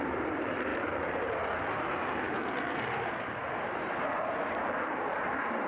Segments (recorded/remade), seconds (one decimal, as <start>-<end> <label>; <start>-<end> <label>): 0.0-0.7 remade; 0.7-3.1 recorded; 3.1-5.7 remade